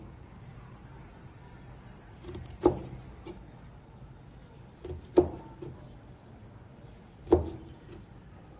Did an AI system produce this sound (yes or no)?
no